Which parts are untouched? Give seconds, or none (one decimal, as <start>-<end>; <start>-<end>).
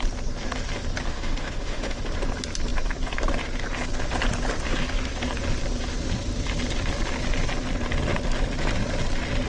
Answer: 0.0-1.1; 2.0-9.5